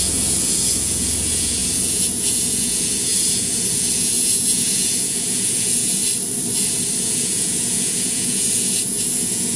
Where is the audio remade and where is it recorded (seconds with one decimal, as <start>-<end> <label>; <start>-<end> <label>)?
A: 0.0-6.0 remade; 6.0-7.0 recorded; 7.0-9.6 remade